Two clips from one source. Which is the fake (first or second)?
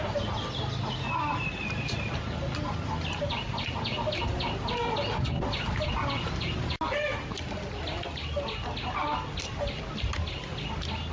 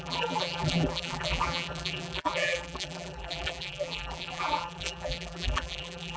second